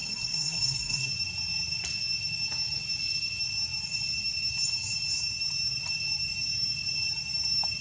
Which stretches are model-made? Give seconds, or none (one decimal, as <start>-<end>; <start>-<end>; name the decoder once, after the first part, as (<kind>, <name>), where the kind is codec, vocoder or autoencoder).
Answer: 0.0-1.1 (codec, SNAC)